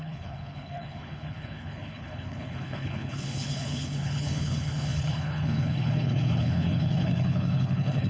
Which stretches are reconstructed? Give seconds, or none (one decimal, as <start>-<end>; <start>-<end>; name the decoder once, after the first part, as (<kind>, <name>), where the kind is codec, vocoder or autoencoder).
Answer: 0.0-8.1 (codec, HILCodec)

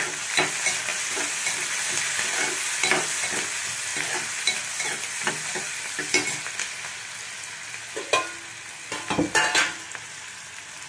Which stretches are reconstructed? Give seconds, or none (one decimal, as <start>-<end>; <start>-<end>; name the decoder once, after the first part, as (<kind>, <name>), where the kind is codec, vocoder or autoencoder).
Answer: 0.9-1.9 (vocoder, BigVGAN v2); 3.9-4.7